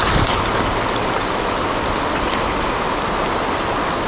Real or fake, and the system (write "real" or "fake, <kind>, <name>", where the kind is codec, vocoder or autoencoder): real